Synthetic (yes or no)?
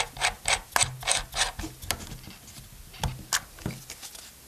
no